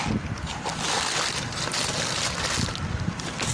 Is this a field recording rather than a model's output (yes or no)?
yes